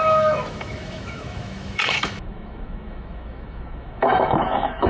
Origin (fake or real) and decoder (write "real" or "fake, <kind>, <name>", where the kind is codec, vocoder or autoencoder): fake, autoencoder, DAC-VAE